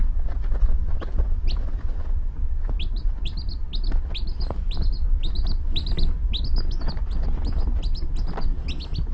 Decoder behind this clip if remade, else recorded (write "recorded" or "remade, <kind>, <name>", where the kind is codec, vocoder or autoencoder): recorded